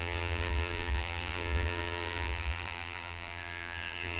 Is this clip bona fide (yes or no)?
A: no